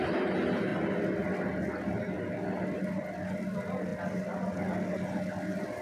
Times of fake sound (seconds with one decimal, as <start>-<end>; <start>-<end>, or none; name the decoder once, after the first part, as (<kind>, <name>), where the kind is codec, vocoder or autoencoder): none